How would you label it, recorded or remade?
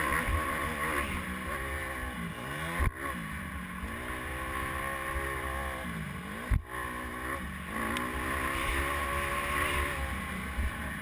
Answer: recorded